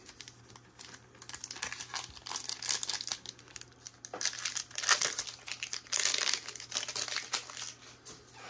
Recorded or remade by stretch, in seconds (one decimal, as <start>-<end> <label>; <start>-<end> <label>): 0.0-8.5 recorded